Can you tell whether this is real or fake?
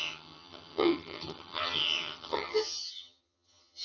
fake